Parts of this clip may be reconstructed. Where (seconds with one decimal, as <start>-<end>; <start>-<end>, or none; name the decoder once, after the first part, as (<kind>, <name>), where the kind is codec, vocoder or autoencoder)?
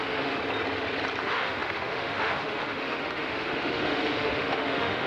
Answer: 0.0-0.4 (autoencoder, DAC-VAE); 1.2-5.1